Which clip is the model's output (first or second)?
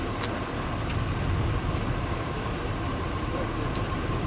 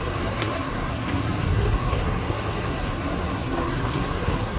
second